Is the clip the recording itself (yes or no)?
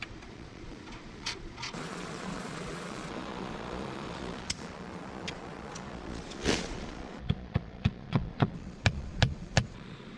no